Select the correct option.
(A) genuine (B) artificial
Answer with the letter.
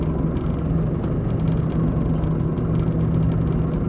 A